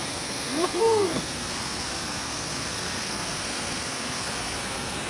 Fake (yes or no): yes